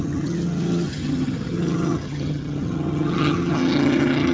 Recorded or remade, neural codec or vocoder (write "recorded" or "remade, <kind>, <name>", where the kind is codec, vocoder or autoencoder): remade, vocoder, HiFi-GAN